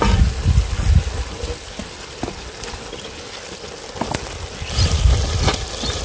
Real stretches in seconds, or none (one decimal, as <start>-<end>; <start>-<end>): 0.0-6.0